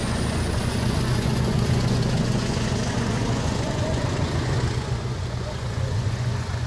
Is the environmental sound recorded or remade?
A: remade